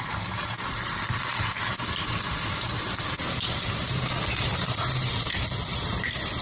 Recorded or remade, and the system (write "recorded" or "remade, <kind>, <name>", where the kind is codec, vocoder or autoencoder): recorded